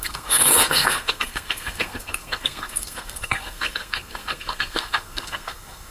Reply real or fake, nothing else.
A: fake